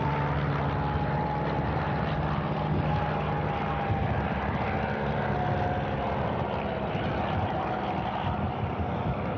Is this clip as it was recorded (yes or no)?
yes